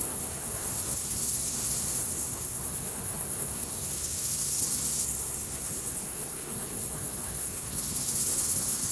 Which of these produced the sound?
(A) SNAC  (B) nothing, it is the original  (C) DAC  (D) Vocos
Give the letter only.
A